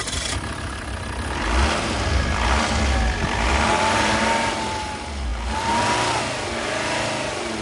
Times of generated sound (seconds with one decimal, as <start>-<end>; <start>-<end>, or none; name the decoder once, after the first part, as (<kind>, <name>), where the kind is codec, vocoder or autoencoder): none